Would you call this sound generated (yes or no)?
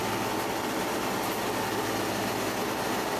no